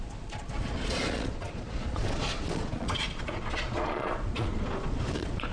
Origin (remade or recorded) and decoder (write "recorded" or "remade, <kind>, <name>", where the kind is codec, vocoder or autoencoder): remade, vocoder, Vocos